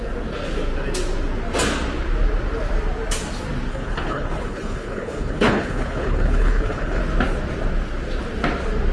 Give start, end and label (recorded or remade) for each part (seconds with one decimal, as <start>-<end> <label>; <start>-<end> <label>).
0.0-3.7 recorded; 3.7-7.0 remade; 7.0-8.9 recorded